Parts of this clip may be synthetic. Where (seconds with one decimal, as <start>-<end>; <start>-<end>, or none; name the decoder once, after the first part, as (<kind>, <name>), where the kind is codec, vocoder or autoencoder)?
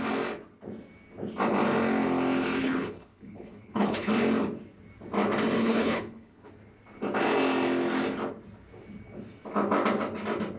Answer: 2.6-4.1 (codec, HILCodec); 5.6-6.5